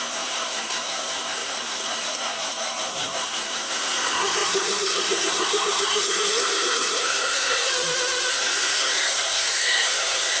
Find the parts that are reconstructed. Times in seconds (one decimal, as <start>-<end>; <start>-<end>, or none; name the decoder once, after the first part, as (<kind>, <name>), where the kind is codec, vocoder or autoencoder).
0.0-7.7 (codec, SNAC); 8.3-10.4